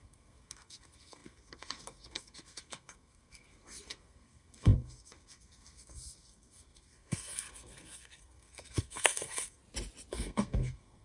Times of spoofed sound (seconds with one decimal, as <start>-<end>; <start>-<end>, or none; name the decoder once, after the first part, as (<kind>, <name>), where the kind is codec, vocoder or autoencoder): 0.0-9.6 (codec, SNAC); 10.1-11.0

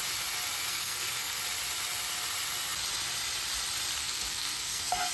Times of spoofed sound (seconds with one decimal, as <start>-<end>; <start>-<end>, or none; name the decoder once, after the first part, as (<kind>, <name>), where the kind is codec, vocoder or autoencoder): 0.7-1.4 (codec, SNAC); 4.0-5.1

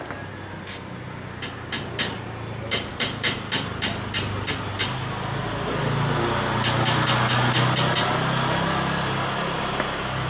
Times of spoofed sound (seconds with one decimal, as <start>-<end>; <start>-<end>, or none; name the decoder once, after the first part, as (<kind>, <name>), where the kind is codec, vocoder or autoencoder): none

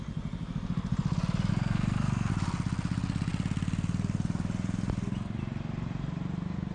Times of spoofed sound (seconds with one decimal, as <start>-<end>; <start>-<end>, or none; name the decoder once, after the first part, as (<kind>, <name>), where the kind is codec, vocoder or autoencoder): 1.5-2.3 (codec, SNAC)

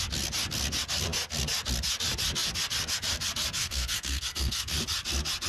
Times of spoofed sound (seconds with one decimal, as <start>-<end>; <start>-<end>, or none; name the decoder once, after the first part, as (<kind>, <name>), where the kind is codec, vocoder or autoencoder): 3.6-4.8 (codec, SNAC)

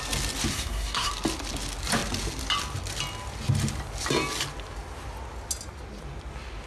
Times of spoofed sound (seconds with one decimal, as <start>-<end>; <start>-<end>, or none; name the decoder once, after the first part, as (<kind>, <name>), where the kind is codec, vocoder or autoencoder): 0.5-1.1 (codec, SNAC)